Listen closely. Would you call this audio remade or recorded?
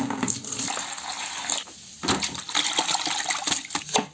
recorded